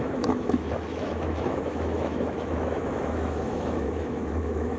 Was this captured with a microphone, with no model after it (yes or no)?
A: no